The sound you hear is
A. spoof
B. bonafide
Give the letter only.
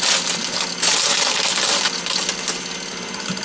B